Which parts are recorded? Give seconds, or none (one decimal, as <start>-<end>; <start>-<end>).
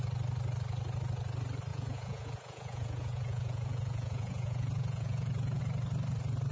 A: 0.0-1.7; 5.6-6.5